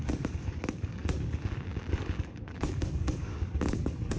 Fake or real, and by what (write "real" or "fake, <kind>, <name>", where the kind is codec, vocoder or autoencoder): fake, codec, DAC